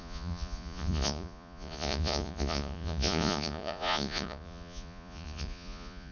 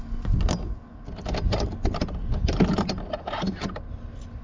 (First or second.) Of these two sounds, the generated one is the first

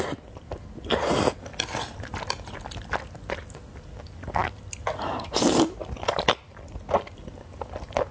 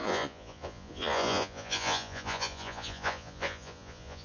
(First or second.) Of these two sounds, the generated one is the second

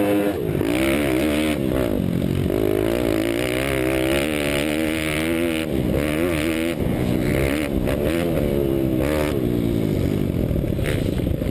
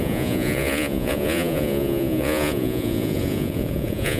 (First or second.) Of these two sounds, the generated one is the second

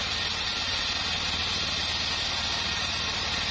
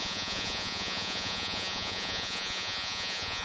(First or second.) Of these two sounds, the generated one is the second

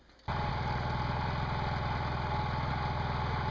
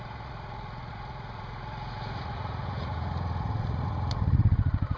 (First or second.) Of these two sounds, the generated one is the second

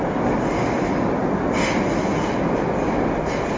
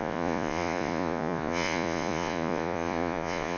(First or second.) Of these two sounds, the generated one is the second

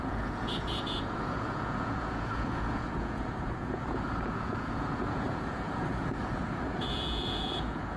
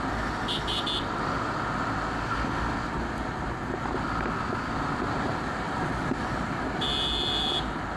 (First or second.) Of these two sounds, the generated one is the first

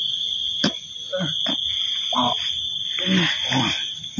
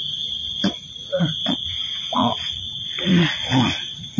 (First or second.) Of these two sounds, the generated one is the second